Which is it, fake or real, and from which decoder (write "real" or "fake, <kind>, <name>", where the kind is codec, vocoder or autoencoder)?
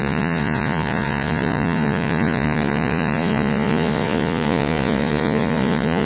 fake, vocoder, Vocos